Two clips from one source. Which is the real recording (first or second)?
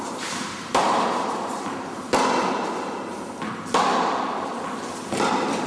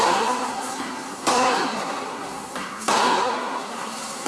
first